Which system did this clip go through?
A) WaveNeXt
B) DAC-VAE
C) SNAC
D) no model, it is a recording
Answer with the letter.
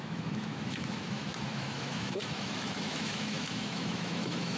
B